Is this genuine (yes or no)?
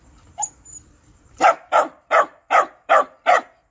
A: no